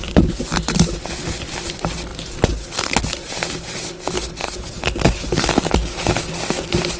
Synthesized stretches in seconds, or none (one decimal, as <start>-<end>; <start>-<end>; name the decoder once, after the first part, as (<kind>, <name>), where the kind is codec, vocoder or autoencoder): none